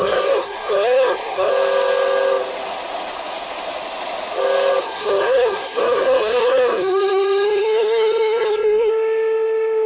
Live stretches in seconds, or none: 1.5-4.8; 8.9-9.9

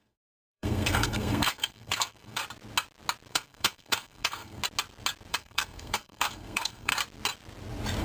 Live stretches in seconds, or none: 2.4-3.3; 4.6-5.3; 6.9-8.0

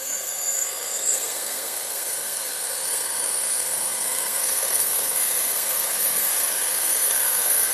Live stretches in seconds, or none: none